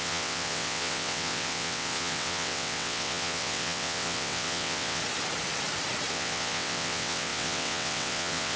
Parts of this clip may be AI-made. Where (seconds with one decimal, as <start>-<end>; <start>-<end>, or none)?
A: 0.0-5.0; 6.1-8.6